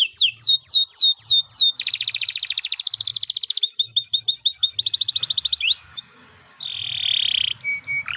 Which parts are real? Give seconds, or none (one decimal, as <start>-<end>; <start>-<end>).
0.0-5.9; 6.6-8.2